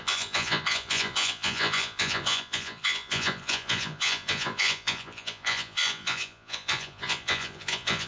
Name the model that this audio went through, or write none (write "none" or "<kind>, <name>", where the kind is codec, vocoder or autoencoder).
vocoder, Vocos